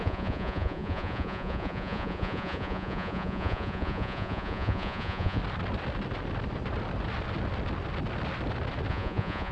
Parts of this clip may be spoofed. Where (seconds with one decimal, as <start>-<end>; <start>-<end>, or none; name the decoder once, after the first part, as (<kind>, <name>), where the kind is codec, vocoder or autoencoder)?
0.0-5.4 (vocoder, Vocos); 8.9-9.5